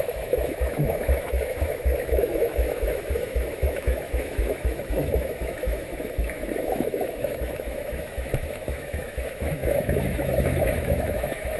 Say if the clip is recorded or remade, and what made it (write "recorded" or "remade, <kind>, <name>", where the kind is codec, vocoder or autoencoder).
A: remade, autoencoder, DAC-VAE